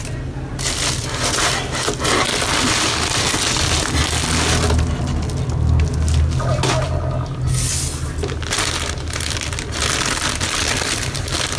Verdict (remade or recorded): recorded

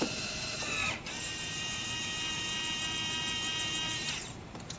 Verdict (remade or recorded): remade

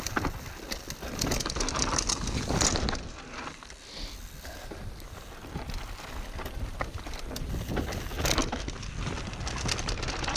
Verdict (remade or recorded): recorded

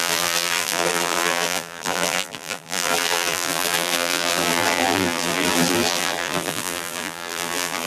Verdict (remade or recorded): remade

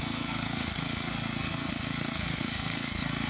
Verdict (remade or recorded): remade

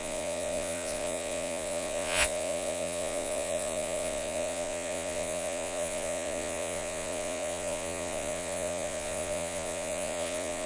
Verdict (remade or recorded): remade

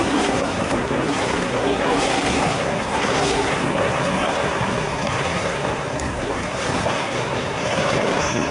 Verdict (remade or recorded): remade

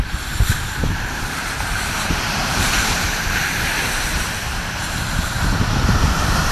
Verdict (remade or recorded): remade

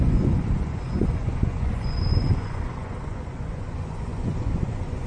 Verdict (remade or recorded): remade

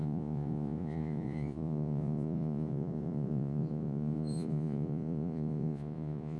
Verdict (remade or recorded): remade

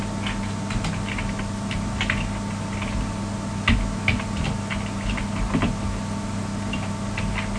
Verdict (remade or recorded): recorded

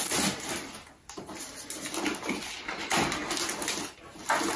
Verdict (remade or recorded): recorded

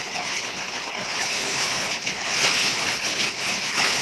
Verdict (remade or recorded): remade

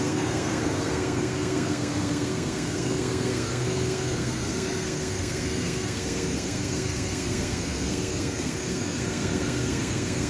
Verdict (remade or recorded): remade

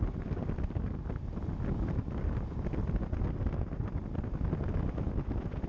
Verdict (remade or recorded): recorded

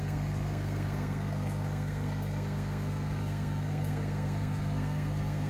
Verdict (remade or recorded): remade